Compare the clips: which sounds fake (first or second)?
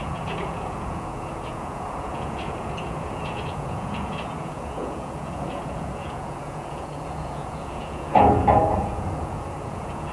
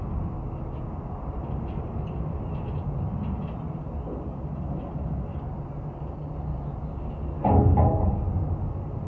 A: first